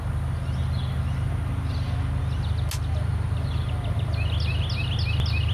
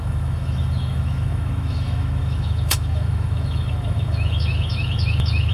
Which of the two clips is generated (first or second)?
second